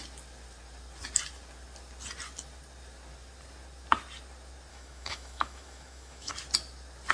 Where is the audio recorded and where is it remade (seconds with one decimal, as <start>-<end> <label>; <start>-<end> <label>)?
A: 0.0-4.7 recorded; 4.7-6.3 remade; 6.3-7.1 recorded